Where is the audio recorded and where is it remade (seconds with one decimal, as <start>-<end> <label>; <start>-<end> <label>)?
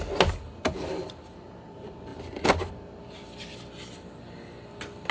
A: 0.0-5.1 recorded